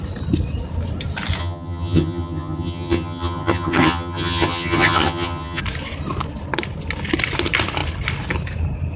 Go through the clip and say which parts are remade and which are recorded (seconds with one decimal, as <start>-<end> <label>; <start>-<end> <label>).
0.0-1.4 recorded; 1.4-5.6 remade; 5.6-9.0 recorded